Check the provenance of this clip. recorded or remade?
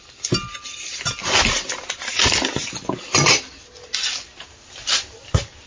recorded